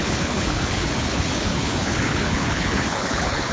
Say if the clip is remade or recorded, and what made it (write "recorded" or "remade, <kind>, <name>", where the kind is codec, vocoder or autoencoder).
remade, codec, HILCodec